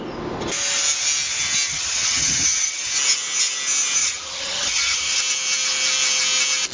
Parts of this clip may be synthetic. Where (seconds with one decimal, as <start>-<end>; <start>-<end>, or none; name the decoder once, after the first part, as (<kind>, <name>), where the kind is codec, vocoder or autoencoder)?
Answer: 1.7-2.8 (vocoder, HiFi-GAN); 4.0-5.2